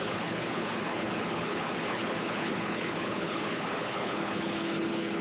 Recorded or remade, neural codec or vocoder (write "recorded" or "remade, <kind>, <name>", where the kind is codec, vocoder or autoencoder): remade, codec, HILCodec